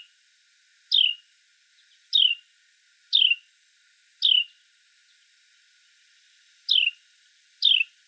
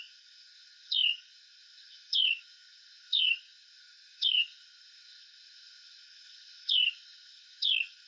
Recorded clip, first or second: first